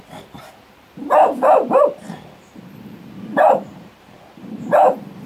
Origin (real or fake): fake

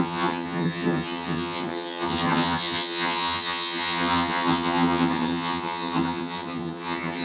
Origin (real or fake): fake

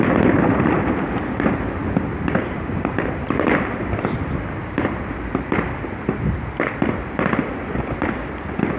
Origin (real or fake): fake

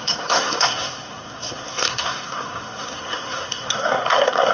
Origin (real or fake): fake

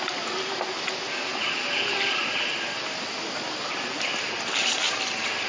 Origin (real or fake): real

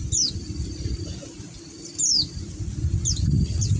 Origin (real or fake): real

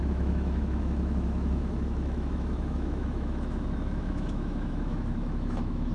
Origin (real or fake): fake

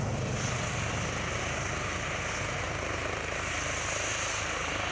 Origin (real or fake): real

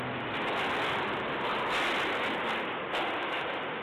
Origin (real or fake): real